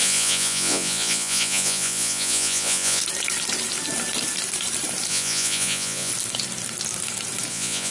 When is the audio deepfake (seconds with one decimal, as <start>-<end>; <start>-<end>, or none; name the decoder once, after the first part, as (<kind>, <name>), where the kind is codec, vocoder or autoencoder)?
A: 0.0-3.0 (vocoder, Vocos); 5.1-6.1; 7.5-7.9